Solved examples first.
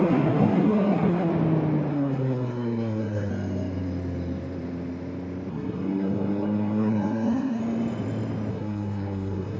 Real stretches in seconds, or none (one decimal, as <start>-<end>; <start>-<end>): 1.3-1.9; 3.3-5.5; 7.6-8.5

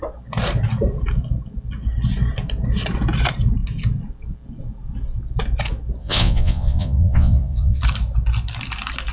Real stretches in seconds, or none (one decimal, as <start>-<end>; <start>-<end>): 0.0-6.0; 7.8-9.1

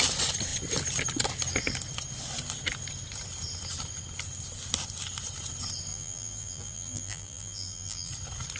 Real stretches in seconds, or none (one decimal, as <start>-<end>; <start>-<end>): 0.0-5.9; 8.1-8.6

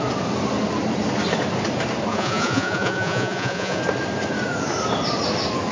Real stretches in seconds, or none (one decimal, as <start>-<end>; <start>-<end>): 0.0-2.1; 3.8-5.7

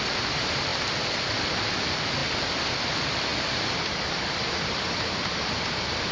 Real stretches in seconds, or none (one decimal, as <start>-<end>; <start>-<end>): 0.7-1.7; 2.2-2.9; 3.3-4.1

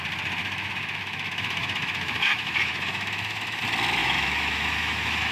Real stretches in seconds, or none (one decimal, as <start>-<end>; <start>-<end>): 0.0-0.4; 3.6-4.0

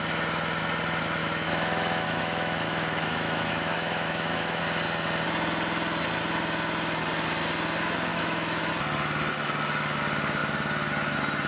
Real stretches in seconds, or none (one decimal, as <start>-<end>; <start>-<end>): 0.0-1.2; 4.6-8.1; 8.7-11.5